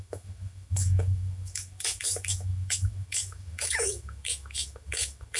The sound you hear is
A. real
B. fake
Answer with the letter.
B